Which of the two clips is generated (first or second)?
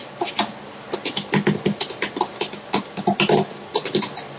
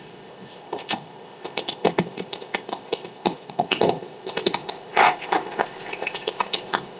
second